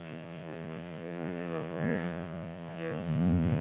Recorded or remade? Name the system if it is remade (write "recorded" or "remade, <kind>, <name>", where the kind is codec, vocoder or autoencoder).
remade, vocoder, Vocos